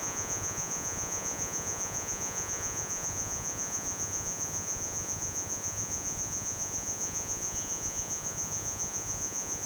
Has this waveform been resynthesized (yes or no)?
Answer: yes